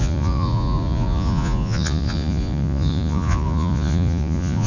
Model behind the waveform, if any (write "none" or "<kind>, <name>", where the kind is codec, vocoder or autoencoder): vocoder, Vocos